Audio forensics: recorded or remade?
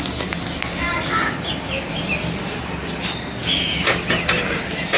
recorded